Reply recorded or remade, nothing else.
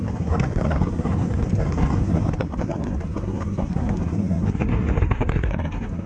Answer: remade